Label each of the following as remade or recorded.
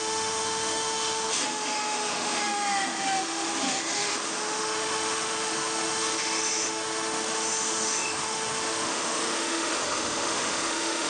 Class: remade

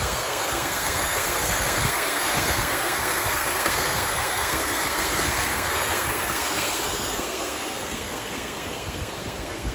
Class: remade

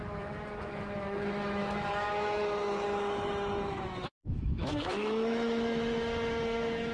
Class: remade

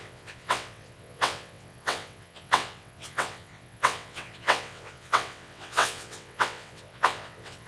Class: remade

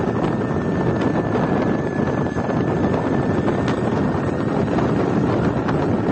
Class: recorded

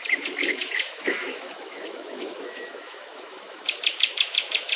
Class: remade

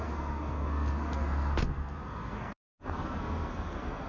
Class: remade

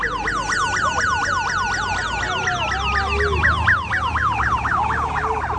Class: recorded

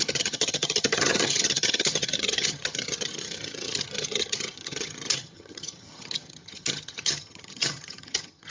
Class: remade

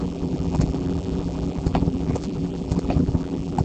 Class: remade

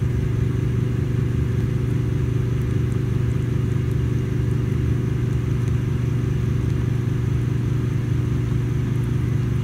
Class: recorded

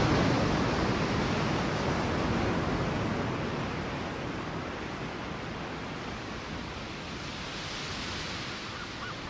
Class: recorded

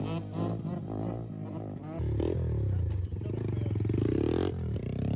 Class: recorded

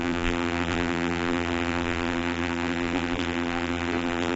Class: remade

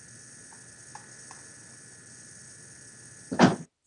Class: recorded